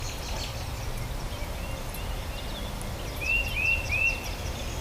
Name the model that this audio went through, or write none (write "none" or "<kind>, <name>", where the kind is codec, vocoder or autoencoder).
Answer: none